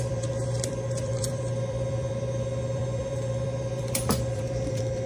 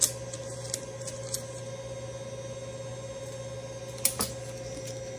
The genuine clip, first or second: second